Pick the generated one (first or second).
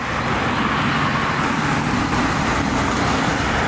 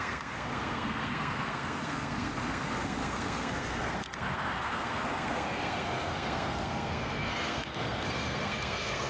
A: second